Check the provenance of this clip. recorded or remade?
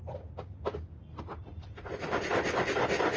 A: recorded